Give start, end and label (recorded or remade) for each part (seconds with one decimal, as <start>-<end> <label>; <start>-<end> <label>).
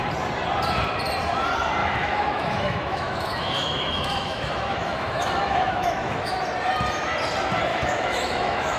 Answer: 0.0-1.8 recorded; 1.8-6.4 remade; 6.4-7.7 recorded; 7.7-8.8 remade